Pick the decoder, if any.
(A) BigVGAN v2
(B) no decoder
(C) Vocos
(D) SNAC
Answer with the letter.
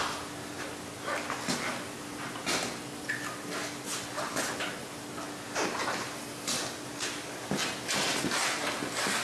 B